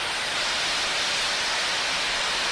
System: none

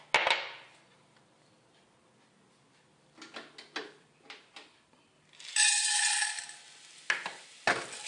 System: none